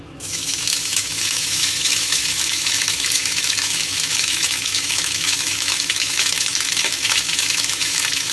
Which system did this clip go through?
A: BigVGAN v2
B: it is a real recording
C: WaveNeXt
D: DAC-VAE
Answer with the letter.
D